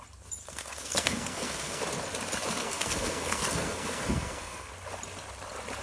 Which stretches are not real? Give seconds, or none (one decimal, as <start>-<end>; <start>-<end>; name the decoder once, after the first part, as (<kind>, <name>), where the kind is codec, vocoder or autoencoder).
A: 0.4-1.8 (codec, SNAC); 2.6-4.7